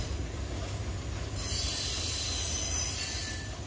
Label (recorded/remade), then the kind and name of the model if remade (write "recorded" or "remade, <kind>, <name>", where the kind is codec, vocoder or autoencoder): recorded